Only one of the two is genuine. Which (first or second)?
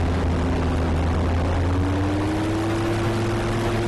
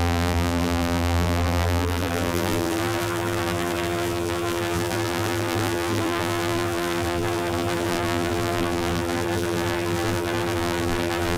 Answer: first